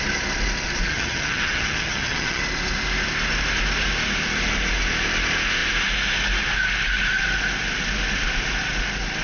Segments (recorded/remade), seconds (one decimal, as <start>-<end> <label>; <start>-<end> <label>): 0.0-0.9 recorded; 0.9-2.4 remade; 2.4-9.2 recorded

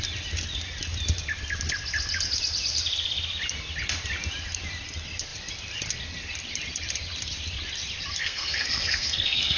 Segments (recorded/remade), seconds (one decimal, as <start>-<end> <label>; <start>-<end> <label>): 0.0-8.2 recorded; 8.2-9.6 remade